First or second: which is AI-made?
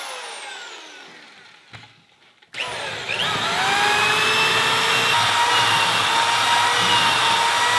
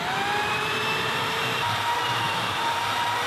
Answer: second